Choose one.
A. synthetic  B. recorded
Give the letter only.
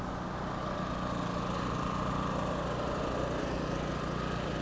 B